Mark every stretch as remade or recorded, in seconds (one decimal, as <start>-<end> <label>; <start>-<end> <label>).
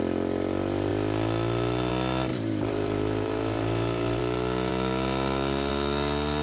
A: 0.0-2.3 recorded; 2.3-4.2 remade; 4.2-6.4 recorded